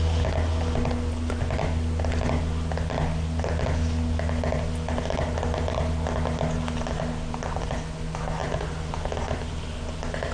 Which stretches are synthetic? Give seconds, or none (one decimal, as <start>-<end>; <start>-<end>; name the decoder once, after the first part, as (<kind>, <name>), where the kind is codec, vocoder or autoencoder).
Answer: none